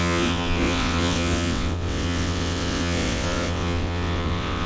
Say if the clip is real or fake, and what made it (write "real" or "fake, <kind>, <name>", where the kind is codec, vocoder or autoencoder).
fake, vocoder, WaveNeXt